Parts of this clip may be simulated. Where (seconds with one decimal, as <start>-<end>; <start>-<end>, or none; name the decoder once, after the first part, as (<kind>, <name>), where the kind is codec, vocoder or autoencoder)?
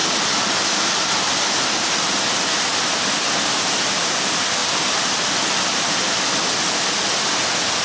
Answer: none